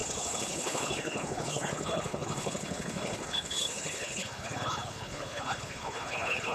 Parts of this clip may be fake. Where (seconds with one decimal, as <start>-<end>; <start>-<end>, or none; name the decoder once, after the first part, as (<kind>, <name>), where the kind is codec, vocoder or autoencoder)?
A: 0.0-6.5 (codec, HILCodec)